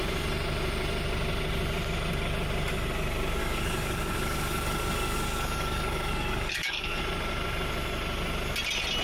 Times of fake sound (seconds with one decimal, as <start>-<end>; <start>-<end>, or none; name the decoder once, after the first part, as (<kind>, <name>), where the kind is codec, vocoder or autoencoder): 3.4-7.0 (codec, DAC)